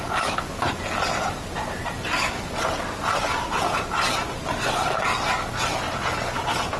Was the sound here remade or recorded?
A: recorded